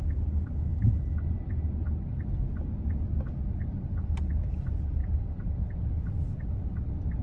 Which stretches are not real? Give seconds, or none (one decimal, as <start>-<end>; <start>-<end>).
0.7-1.4; 5.0-5.7